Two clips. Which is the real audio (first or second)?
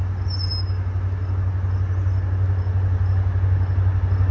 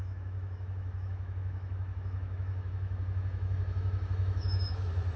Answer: first